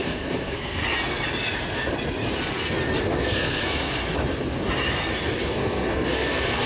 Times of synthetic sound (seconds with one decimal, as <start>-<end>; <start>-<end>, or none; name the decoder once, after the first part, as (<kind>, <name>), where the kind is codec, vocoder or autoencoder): 0.0-0.8 (codec, SNAC); 3.0-4.0; 5.5-6.7